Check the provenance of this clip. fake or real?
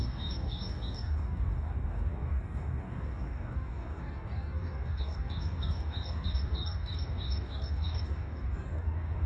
fake